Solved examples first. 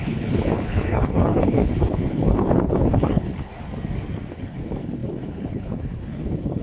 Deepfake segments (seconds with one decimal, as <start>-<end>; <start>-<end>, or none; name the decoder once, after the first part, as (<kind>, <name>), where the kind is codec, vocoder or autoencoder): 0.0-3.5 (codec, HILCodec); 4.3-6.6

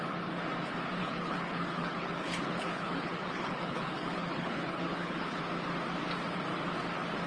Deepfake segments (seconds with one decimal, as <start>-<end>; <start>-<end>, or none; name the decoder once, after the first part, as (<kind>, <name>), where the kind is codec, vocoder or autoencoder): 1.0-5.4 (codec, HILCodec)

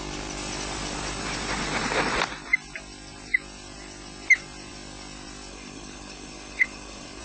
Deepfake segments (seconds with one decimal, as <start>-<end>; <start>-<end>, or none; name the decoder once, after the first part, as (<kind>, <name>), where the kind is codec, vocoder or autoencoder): 5.5-7.2 (codec, HILCodec)